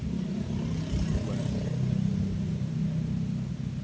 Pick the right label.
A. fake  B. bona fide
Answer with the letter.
B